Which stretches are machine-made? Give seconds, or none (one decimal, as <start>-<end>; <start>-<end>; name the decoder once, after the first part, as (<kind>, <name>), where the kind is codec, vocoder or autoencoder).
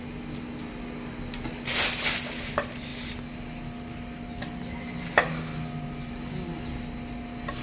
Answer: none